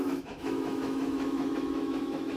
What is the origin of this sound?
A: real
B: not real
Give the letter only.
B